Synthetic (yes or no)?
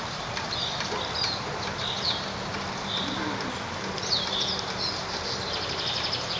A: no